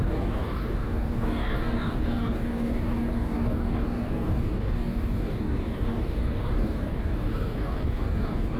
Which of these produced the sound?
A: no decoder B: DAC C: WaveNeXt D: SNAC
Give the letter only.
B